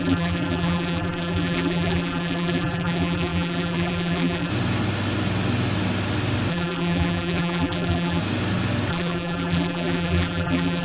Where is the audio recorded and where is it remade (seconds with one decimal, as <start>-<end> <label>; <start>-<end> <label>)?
0.0-4.5 remade; 4.5-6.5 recorded; 6.5-8.2 remade; 8.2-8.9 recorded; 8.9-10.8 remade